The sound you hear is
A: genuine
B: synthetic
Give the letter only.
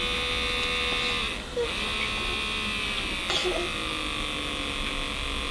A